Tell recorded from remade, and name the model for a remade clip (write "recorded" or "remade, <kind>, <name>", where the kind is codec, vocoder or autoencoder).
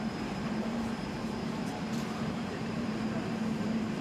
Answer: remade, vocoder, BigVGAN v2